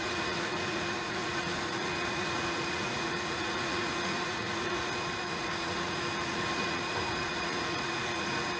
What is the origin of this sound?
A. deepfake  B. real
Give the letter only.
A